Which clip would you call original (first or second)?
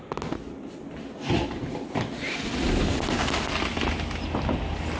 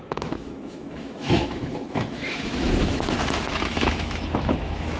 first